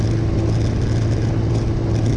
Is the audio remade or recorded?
recorded